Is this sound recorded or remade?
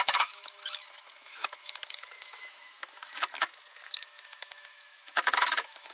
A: remade